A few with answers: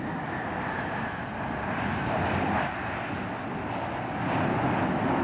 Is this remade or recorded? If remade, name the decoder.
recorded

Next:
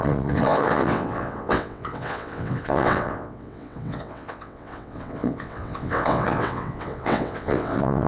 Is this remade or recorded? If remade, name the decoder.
remade, vocoder, WaveNeXt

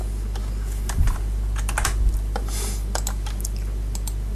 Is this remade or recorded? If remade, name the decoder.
recorded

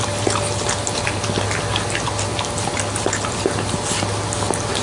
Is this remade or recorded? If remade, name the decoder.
recorded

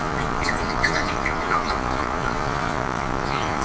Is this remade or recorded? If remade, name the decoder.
remade, vocoder, Vocos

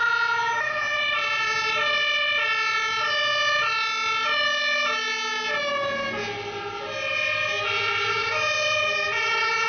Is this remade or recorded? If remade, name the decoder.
recorded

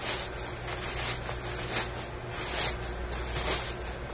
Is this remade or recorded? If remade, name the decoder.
recorded